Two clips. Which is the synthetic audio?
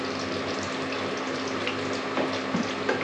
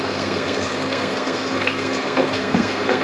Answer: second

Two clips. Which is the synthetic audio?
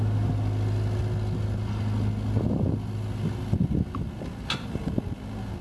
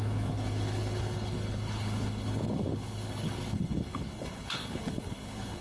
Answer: second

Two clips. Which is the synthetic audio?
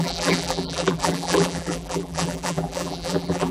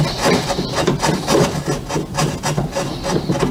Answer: first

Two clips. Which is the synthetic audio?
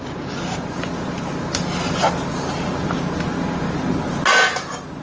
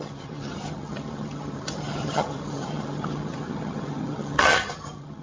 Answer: second